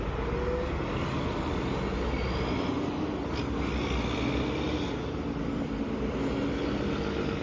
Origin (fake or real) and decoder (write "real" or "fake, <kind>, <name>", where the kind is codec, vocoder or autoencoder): real